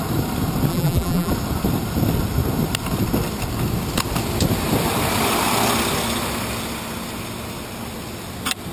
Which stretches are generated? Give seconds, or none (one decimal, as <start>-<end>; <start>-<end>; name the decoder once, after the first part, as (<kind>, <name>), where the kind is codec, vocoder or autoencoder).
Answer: 0.7-1.3 (vocoder, BigVGAN v2)